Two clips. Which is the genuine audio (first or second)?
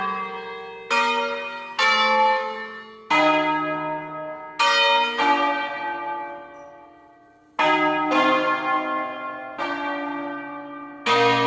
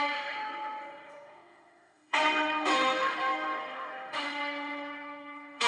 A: first